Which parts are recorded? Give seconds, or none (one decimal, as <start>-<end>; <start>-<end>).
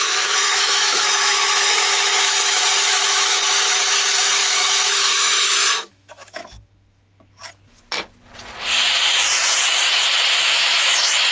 7.4-10.4